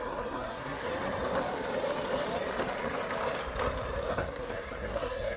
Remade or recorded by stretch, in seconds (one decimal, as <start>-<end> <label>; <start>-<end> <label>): 0.0-0.9 remade; 0.9-4.1 recorded; 4.1-5.4 remade